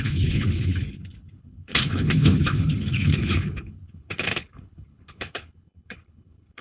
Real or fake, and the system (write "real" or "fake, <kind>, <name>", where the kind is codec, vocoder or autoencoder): fake, codec, HILCodec